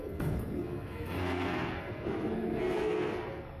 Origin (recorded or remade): remade